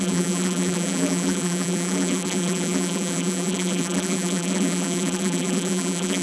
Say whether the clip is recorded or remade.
remade